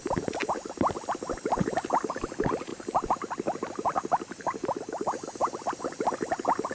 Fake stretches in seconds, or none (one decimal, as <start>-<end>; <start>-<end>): none